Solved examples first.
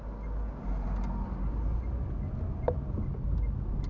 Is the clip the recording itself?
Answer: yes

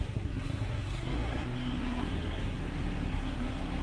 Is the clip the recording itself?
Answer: no